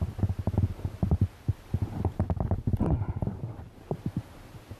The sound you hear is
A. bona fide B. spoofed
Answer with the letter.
A